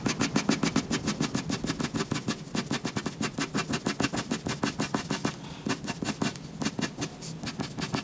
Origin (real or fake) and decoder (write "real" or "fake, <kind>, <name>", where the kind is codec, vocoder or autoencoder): real